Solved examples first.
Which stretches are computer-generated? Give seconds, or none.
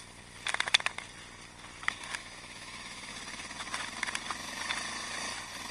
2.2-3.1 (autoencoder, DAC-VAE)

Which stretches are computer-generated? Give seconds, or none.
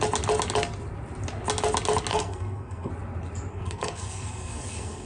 2.1-2.9 (codec, SNAC); 3.5-5.1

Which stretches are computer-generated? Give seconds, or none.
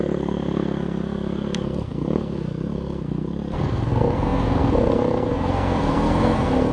0.0-6.7 (codec, SNAC)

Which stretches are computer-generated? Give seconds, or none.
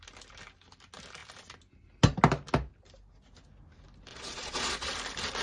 4.1-4.9 (vocoder, Vocos)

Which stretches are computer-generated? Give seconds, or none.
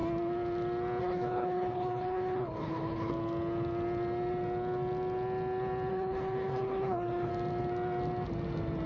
1.0-3.1 (codec, HILCodec); 5.9-7.3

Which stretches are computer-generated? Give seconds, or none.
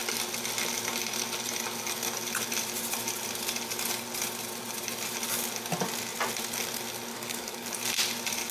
7.1-7.7 (codec, DAC)